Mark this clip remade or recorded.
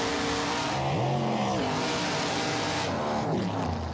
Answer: recorded